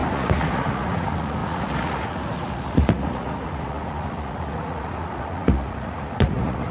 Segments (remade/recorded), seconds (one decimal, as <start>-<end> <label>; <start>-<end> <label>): 0.0-6.7 remade